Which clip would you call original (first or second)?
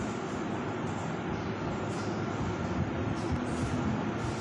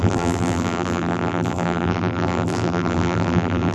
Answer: first